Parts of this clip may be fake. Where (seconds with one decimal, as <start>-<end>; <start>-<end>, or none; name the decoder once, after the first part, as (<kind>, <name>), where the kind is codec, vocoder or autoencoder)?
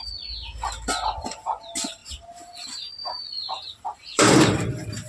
2.0-5.1 (vocoder, BigVGAN v2)